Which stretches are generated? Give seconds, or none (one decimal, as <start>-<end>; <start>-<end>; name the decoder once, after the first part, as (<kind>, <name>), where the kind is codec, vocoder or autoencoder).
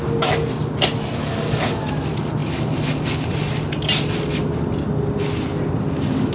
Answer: 1.2-1.9 (codec, DAC)